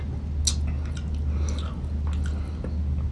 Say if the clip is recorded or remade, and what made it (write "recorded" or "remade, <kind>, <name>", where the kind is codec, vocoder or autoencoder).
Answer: recorded